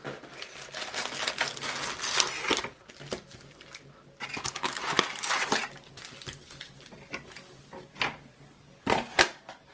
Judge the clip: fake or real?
real